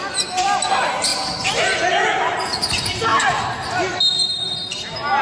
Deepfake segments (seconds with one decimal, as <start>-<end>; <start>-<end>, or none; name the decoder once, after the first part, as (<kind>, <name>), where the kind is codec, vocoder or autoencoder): none